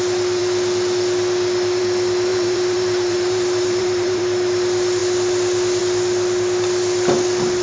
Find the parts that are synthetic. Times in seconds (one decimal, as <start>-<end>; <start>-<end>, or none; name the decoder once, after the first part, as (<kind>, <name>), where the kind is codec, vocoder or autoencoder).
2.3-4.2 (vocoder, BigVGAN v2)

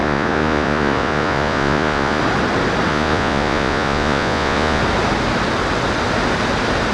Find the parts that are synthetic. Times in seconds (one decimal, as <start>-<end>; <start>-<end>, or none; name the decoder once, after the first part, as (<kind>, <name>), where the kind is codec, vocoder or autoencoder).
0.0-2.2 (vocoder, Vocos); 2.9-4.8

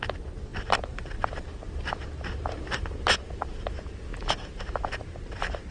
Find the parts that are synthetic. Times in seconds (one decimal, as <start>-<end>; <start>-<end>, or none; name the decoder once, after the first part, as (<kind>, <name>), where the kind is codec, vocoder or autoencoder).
0.0-5.7 (vocoder, BigVGAN v2)